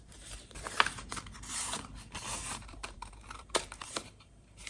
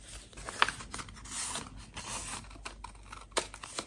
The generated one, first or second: first